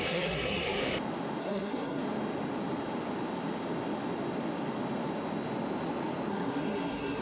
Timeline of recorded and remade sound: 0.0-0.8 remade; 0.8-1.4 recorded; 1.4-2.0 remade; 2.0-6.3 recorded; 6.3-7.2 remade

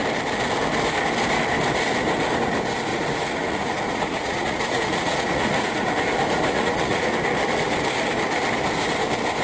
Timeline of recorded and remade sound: 0.0-2.9 recorded; 2.9-5.9 remade; 5.9-6.5 recorded; 6.5-7.1 remade; 7.1-9.4 recorded

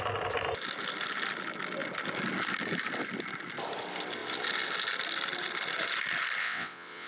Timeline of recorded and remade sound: 0.0-6.4 recorded; 6.4-7.1 remade

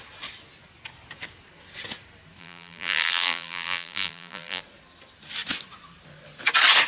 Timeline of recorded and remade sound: 0.0-2.4 recorded; 2.4-4.6 remade; 4.6-6.9 recorded